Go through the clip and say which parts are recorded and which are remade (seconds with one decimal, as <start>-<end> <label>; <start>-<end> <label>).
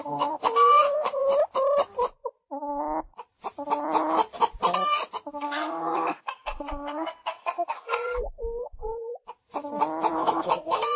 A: 0.0-1.3 remade; 1.3-5.3 recorded; 5.3-8.9 remade; 8.9-10.1 recorded; 10.1-11.0 remade